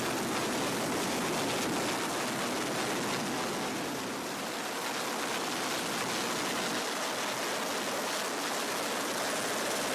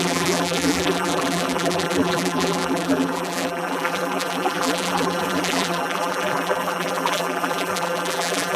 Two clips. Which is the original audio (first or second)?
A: first